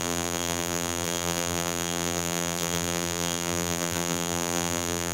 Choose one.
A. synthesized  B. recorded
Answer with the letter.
A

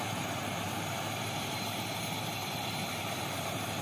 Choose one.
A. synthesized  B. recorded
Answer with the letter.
A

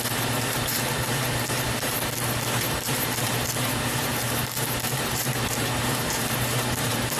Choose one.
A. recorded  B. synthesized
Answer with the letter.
B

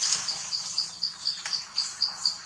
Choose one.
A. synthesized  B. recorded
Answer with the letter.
B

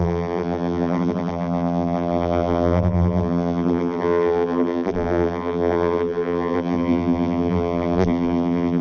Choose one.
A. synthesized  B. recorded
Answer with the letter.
A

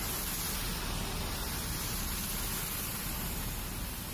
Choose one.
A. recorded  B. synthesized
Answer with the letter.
A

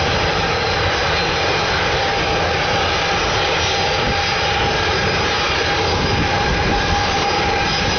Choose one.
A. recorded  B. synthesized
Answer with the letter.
A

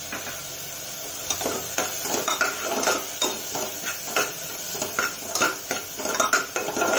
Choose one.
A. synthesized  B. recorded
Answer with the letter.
B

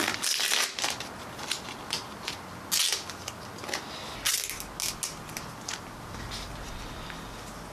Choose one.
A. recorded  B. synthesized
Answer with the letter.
A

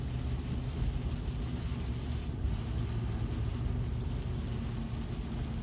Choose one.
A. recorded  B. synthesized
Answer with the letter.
A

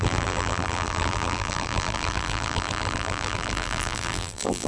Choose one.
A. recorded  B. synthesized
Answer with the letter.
B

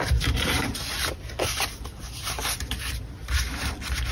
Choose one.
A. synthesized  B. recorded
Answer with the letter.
A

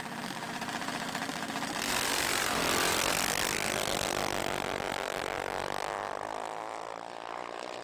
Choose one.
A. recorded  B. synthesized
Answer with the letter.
A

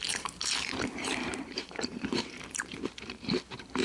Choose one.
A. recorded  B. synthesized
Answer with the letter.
B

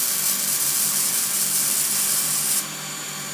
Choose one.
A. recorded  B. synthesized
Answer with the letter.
A